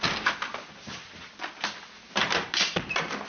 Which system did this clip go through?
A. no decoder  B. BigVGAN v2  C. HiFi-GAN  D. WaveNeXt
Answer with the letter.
A